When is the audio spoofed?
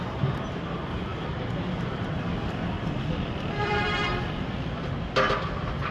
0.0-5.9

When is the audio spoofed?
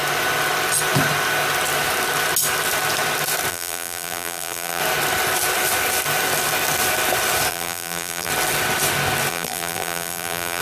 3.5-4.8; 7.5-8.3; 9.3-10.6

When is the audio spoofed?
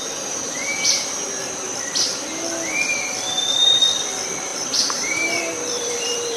4.5-6.4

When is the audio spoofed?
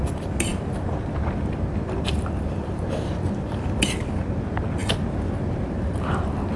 0.5-4.3